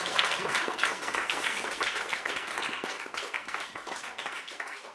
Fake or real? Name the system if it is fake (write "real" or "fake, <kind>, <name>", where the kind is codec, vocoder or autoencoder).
fake, codec, SNAC